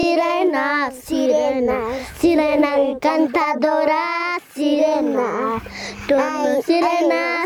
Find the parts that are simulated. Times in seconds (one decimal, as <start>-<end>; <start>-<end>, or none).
0.0-0.5; 2.0-3.1